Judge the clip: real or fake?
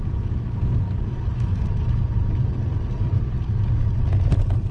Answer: real